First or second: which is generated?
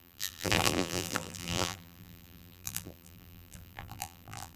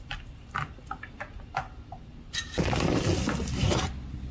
first